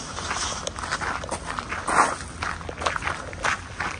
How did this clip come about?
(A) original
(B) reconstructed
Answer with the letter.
A